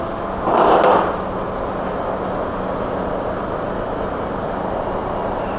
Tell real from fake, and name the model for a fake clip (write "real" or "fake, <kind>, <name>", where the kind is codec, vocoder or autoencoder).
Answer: real